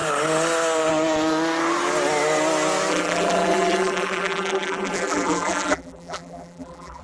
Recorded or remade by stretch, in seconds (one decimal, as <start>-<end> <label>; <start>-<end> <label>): 0.0-2.9 recorded; 2.9-7.0 remade

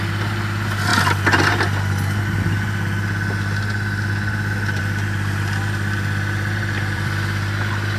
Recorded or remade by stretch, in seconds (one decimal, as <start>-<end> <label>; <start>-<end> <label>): 0.0-0.9 remade; 0.9-4.8 recorded; 4.8-8.0 remade

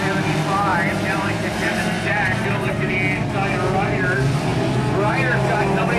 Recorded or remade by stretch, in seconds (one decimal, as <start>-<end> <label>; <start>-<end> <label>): 0.0-0.7 recorded; 0.7-2.9 remade; 2.9-6.0 recorded

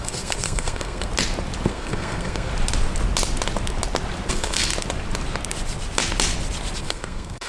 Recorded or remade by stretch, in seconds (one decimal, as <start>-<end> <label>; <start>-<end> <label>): 0.0-1.1 remade; 1.1-1.7 recorded; 1.7-2.5 remade; 2.5-4.3 recorded; 4.3-4.7 remade; 4.7-6.8 recorded; 6.8-7.5 remade

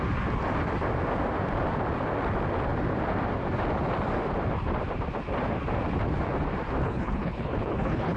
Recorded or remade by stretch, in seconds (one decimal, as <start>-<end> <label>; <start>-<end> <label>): 0.0-6.8 recorded; 6.8-8.2 remade

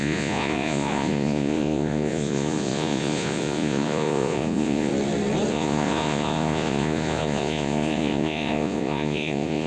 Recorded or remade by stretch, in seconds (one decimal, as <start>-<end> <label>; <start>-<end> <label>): 0.0-4.9 remade; 4.9-5.5 recorded; 5.5-9.7 remade